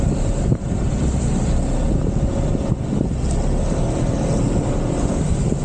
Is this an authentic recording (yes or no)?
yes